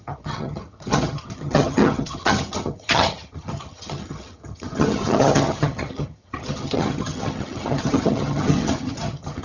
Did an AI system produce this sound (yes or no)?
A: yes